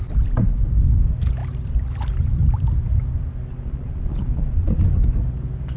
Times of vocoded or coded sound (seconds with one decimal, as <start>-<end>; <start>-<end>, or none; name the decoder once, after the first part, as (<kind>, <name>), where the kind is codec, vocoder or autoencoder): 3.5-4.8 (vocoder, Vocos)